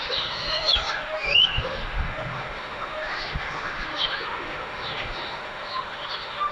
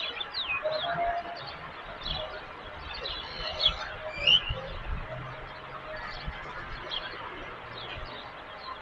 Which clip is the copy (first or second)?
first